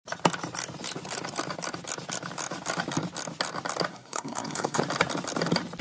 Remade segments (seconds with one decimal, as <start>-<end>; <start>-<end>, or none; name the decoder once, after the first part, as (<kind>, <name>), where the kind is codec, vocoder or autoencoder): 3.9-4.8 (codec, SNAC)